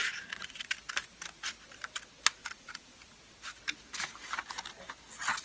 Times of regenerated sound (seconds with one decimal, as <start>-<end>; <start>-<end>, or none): 0.0-0.7; 2.4-3.2